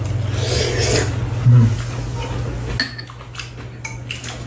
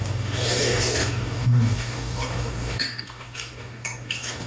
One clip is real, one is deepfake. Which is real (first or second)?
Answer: first